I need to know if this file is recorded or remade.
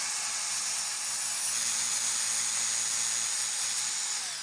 recorded